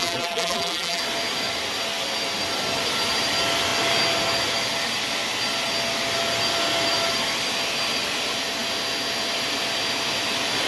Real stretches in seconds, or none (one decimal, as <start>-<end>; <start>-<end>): 1.0-10.7